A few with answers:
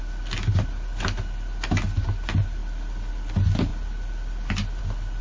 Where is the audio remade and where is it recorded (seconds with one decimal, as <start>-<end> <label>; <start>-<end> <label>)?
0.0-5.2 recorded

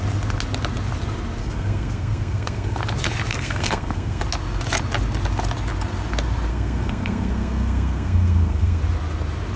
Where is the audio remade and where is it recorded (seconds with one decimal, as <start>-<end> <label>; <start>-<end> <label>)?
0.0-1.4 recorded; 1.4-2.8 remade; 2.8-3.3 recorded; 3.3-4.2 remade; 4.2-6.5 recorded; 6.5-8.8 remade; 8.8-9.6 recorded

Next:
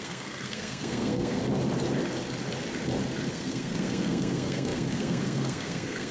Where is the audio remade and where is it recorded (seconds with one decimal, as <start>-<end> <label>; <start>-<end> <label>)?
0.0-1.4 remade; 1.4-3.3 recorded; 3.3-6.1 remade